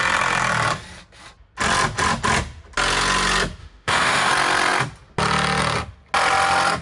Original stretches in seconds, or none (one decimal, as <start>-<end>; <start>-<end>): 0.0-3.6; 4.3-6.8

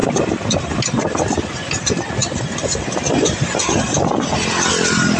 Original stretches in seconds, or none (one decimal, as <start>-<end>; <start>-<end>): 0.0-5.2

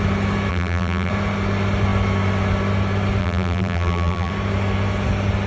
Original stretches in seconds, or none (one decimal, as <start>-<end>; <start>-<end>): 0.0-0.5; 1.1-3.2; 4.3-5.5

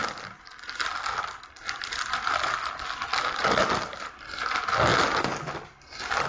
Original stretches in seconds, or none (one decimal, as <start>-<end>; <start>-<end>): 0.0-6.3

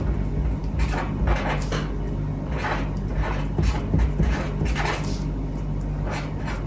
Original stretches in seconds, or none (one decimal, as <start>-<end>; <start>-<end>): 0.0-6.7

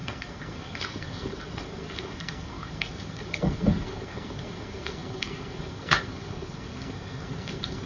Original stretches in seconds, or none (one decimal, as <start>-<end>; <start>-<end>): none

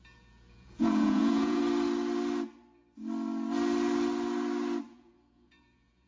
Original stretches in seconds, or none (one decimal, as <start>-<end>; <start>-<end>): 1.6-4.9

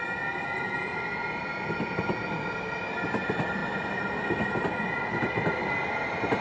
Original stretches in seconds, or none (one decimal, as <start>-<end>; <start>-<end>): 0.0-6.4